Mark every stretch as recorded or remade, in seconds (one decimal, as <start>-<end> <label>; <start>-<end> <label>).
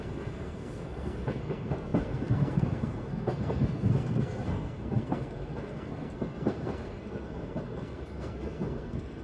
0.0-9.2 remade